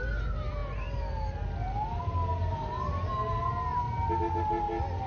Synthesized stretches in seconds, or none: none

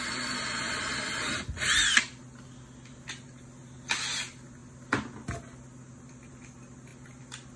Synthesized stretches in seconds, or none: none

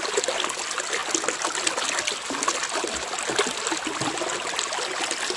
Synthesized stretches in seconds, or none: none